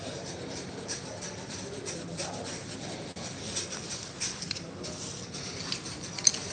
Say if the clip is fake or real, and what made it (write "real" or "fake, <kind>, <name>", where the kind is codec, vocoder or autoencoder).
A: real